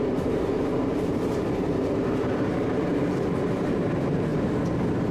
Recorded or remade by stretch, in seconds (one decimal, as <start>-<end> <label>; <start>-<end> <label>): 0.0-4.3 remade; 4.3-5.1 recorded